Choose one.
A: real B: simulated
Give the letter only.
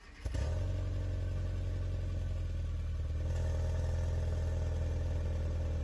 A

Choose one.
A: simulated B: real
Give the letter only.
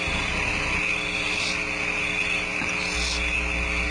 B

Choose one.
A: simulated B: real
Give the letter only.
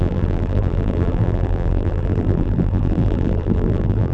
A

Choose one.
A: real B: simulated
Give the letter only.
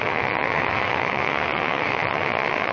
B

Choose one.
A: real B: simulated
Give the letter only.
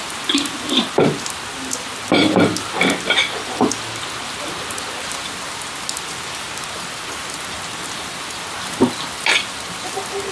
A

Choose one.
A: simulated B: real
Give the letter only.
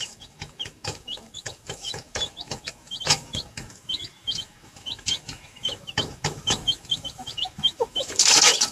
A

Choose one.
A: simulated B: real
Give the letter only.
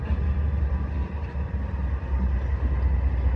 B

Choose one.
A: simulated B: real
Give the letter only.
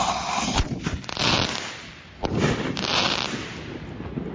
B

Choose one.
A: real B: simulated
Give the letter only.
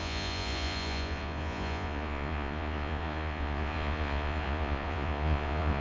B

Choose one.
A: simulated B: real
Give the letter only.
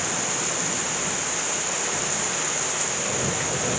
B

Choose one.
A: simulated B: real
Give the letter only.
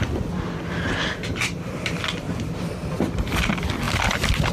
B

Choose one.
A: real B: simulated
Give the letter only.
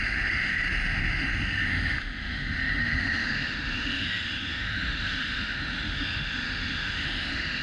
B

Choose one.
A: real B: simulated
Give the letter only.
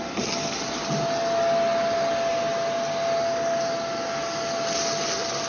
A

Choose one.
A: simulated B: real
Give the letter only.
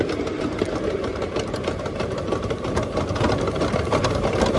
B